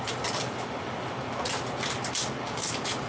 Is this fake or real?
real